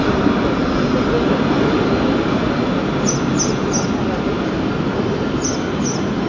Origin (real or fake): real